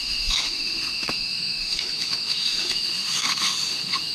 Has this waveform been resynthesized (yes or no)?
yes